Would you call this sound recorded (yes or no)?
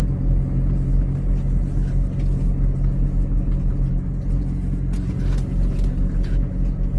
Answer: yes